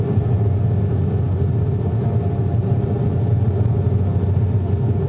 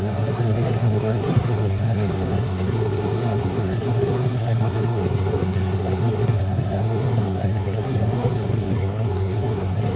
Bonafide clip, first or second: first